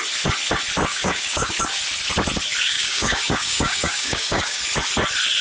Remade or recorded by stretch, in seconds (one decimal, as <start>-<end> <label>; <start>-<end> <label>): 0.0-0.9 recorded; 0.9-1.5 remade; 1.5-2.6 recorded; 2.6-4.6 remade; 4.6-5.4 recorded